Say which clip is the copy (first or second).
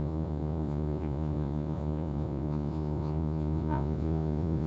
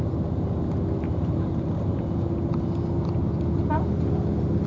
first